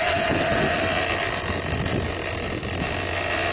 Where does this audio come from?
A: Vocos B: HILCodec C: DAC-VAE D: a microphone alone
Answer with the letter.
D